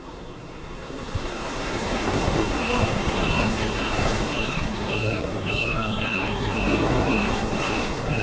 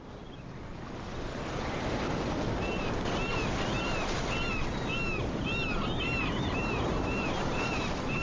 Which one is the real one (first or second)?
second